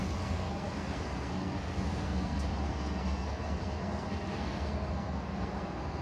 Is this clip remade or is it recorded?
remade